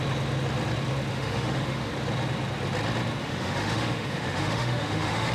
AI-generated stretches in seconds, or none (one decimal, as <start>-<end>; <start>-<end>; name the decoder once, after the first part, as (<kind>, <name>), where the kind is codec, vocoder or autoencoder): 1.1-1.9 (autoencoder, DAC-VAE); 3.2-5.3